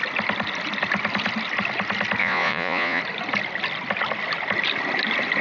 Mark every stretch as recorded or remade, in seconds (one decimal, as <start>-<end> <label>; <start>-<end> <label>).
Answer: 0.0-2.2 recorded; 2.2-3.0 remade; 3.0-5.4 recorded

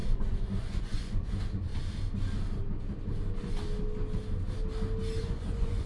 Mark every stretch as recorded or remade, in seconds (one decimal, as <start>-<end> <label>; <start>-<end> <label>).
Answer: 0.0-1.7 remade; 1.7-5.2 recorded; 5.2-5.9 remade

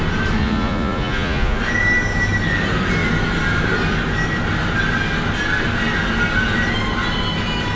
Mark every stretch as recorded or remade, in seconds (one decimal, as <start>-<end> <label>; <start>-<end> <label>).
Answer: 0.0-0.4 recorded; 0.4-1.6 remade; 1.6-7.8 recorded

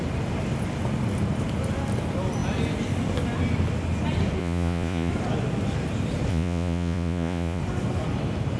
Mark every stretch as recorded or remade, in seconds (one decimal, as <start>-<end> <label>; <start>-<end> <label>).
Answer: 0.0-4.4 recorded; 4.4-5.1 remade; 5.1-6.3 recorded; 6.3-7.6 remade; 7.6-8.6 recorded

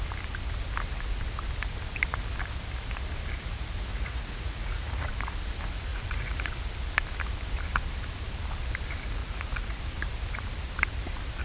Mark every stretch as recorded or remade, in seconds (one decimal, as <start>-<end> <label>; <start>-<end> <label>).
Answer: 0.0-3.9 recorded; 3.9-5.1 remade; 5.1-5.9 recorded; 5.9-6.5 remade; 6.5-9.2 recorded; 9.2-9.8 remade; 9.8-11.4 recorded

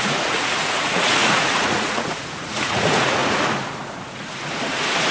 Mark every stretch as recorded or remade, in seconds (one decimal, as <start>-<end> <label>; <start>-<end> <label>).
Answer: 0.0-5.1 remade

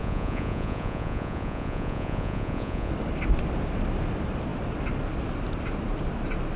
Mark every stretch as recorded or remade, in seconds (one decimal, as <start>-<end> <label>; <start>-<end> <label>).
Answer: 0.0-2.9 remade; 2.9-6.6 recorded